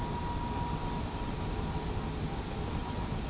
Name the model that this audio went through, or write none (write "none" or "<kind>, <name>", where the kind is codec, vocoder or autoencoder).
none